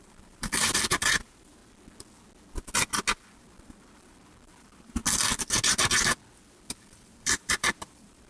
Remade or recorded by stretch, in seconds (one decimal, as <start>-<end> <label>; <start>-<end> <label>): 0.0-1.6 remade; 1.6-3.4 recorded; 3.4-5.0 remade; 5.0-6.7 recorded; 6.7-8.3 remade